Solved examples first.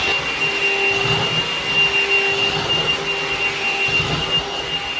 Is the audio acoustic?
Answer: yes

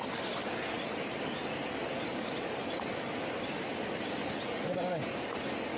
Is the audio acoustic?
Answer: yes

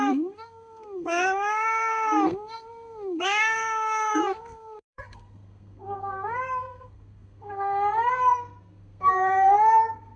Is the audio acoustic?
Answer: no